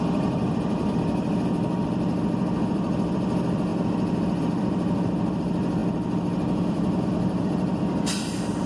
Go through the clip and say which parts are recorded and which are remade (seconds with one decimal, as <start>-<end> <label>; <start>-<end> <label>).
0.0-3.7 remade; 3.7-4.4 recorded; 4.4-5.8 remade; 5.8-6.7 recorded; 6.7-8.7 remade